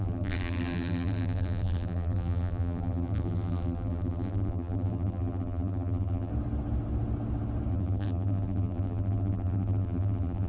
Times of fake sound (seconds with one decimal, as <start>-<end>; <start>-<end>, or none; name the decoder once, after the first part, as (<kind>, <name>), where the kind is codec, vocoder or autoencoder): 0.0-6.3 (vocoder, BigVGAN v2); 7.7-10.5